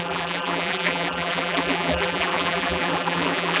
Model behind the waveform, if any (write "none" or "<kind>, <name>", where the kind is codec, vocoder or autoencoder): vocoder, BigVGAN v2